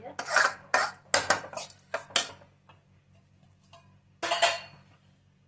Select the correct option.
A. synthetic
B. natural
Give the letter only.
B